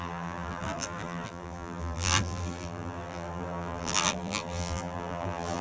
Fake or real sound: fake